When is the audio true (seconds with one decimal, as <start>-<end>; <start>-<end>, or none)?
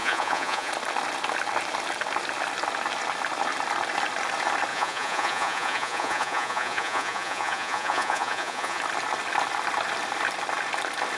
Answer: 0.7-4.7; 8.8-11.2